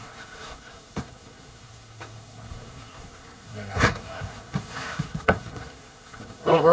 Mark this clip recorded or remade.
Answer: remade